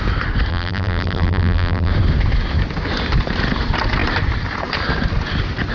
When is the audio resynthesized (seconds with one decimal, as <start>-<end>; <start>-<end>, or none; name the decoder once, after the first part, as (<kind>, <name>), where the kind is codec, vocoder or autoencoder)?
0.5-1.9 (vocoder, BigVGAN v2)